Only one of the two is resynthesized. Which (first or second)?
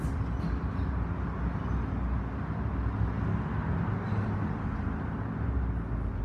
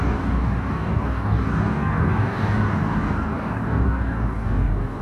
second